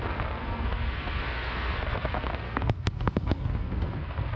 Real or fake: fake